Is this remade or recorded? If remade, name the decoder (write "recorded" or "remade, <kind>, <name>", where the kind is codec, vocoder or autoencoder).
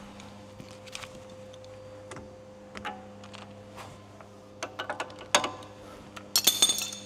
recorded